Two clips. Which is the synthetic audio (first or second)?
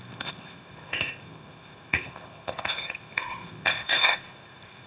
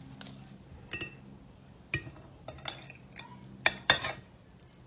first